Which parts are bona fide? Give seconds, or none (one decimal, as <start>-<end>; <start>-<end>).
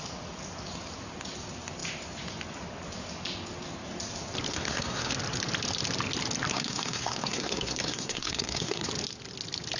0.0-4.5; 5.1-6.5; 8.9-9.8